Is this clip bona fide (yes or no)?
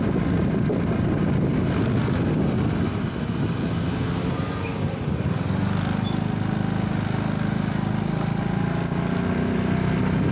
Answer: yes